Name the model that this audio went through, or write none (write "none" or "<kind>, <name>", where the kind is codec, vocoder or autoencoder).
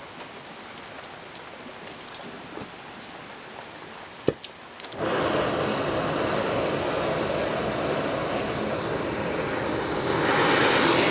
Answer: none